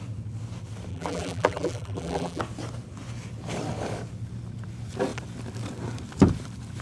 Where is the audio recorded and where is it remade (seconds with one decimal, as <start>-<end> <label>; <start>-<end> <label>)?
0.0-0.9 recorded; 0.9-2.4 remade; 2.4-6.8 recorded